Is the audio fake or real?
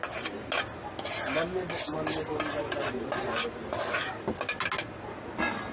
real